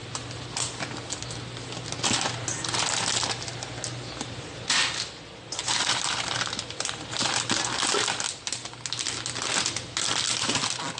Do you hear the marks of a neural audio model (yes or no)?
no